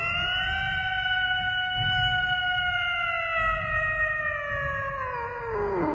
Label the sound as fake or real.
real